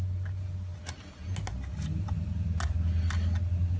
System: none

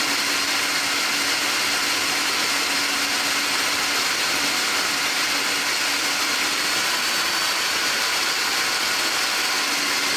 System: none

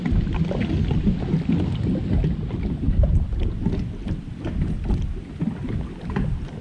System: none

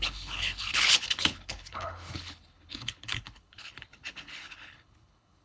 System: codec, HILCodec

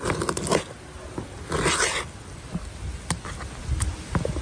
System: none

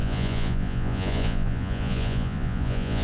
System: vocoder, Vocos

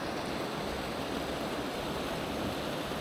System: none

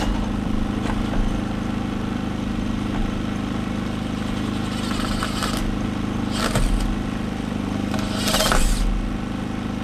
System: none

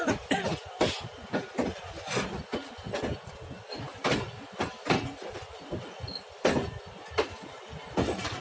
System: none